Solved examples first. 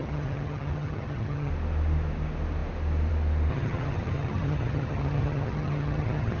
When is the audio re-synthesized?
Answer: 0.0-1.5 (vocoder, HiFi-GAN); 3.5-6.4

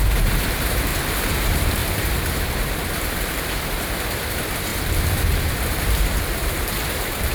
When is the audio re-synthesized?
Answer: 0.0-0.9 (vocoder, BigVGAN v2); 1.4-7.3

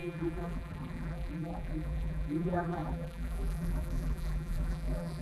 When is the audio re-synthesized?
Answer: 0.0-5.2 (vocoder, BigVGAN v2)

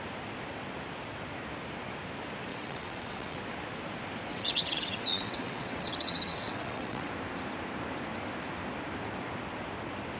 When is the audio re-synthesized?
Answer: 2.5-3.4 (vocoder, WaveNeXt); 4.3-7.1

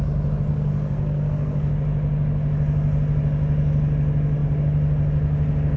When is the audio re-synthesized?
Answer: 0.5-1.7 (codec, SNAC)